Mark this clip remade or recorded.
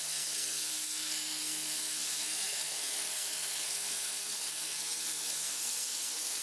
remade